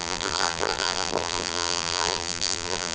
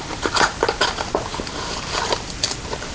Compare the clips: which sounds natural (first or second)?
second